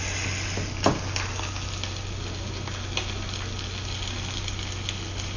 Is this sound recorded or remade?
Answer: recorded